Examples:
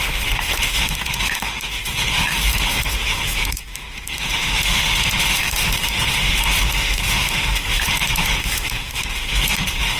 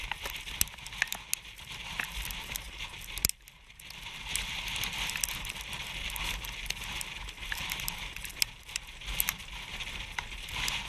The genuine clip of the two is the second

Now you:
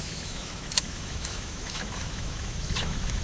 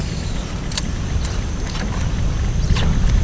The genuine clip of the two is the second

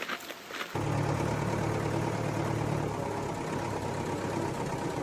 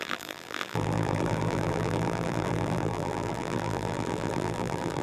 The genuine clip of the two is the first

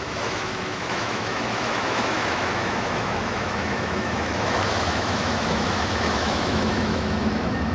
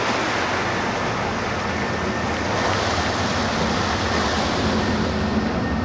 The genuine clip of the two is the second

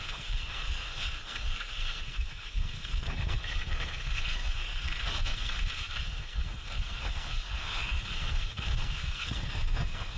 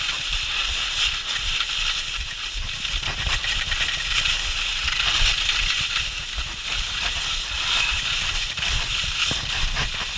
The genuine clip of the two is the second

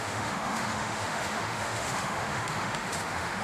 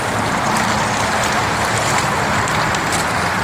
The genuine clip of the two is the second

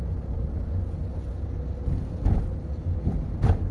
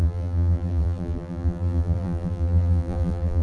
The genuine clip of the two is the first